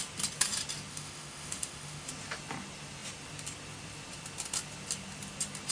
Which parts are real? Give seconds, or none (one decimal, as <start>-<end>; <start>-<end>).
0.0-0.9; 2.1-5.7